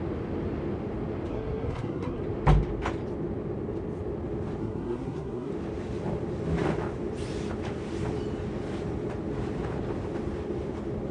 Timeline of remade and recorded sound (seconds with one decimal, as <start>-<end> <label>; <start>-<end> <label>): 0.0-1.3 recorded; 1.3-2.2 remade; 2.2-4.6 recorded; 4.6-5.5 remade; 5.5-11.1 recorded